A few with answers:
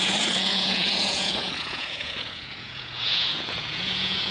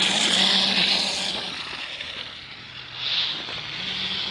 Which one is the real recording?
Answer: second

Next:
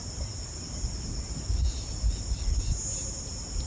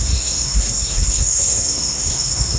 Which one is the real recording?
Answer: first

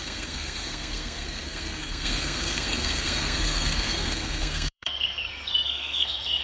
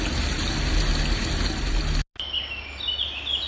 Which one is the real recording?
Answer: second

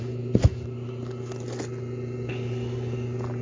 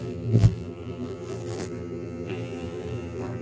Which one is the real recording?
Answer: first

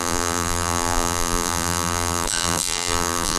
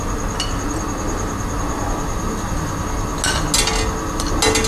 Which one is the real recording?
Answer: second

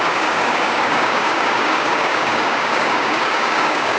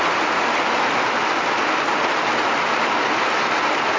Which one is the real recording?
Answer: second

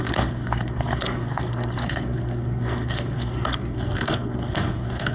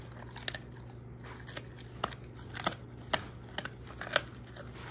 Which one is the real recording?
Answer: second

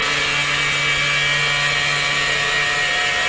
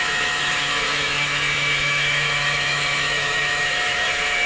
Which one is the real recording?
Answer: first